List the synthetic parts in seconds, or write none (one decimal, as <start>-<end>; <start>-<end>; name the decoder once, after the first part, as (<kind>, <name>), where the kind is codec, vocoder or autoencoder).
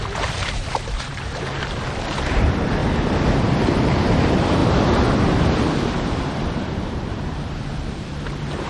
0.0-2.8 (vocoder, BigVGAN v2); 3.8-4.6; 5.4-8.7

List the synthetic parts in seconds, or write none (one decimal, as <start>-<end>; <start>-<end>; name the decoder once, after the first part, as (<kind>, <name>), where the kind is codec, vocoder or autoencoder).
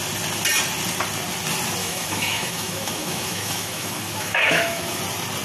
1.8-5.0 (autoencoder, DAC-VAE)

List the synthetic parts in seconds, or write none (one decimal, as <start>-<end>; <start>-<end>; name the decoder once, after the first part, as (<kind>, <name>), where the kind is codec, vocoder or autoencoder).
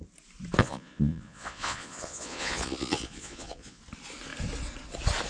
0.6-3.8 (vocoder, Vocos)